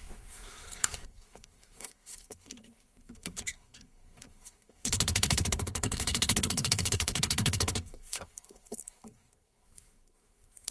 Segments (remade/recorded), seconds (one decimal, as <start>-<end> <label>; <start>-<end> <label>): 0.0-10.7 remade